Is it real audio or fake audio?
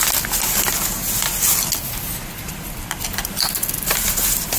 real